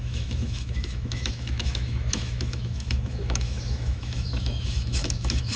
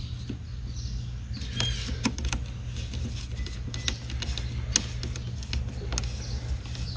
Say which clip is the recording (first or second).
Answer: second